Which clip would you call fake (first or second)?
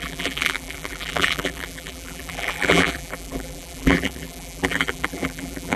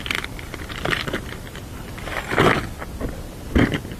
first